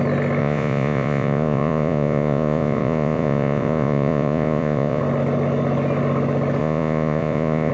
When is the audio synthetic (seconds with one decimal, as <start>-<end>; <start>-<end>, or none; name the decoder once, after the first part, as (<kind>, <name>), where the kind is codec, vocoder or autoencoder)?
0.4-5.0 (vocoder, Vocos); 6.6-7.7